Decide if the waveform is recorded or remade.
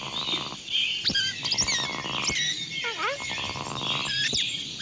recorded